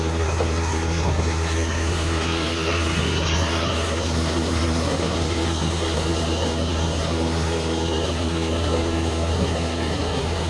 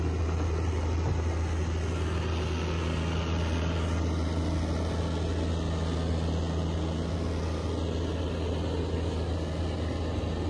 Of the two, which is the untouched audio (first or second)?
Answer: second